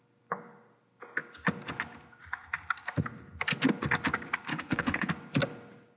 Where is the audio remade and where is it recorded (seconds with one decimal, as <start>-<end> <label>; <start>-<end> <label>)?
0.0-4.5 recorded; 4.5-5.1 remade; 5.1-6.0 recorded